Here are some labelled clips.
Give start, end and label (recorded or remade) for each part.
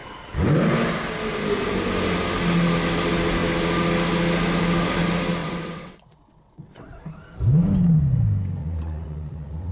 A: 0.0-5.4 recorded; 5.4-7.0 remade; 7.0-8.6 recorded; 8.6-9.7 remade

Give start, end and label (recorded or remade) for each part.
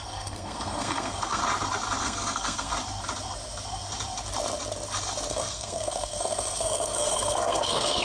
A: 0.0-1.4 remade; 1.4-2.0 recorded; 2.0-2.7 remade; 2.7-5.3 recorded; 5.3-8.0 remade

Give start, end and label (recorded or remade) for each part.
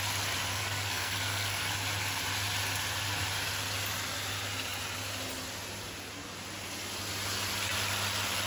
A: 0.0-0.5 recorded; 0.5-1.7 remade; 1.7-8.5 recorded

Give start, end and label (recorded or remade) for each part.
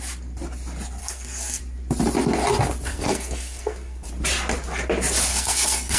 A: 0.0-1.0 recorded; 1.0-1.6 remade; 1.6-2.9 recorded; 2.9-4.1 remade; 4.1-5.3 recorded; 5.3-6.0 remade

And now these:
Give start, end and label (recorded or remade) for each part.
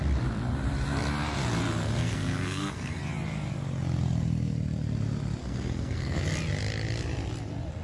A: 0.0-1.8 recorded; 1.8-3.0 remade; 3.0-5.4 recorded; 5.4-6.2 remade; 6.2-7.8 recorded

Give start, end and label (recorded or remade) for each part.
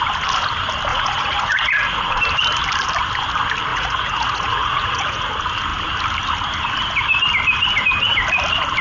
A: 0.0-0.9 recorded; 0.9-2.2 remade; 2.2-3.7 recorded; 3.7-5.3 remade; 5.3-8.8 recorded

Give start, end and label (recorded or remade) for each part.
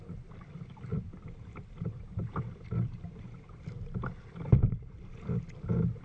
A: 0.0-0.9 recorded; 0.9-3.2 remade; 3.2-6.0 recorded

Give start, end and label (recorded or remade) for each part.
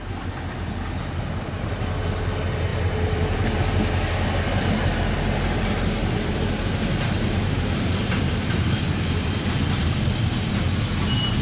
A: 0.0-11.4 recorded